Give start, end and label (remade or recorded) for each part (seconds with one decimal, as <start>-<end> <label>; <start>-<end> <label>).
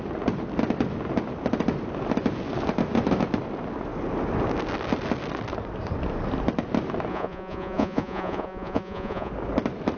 0.0-7.1 recorded; 7.1-9.3 remade; 9.3-10.0 recorded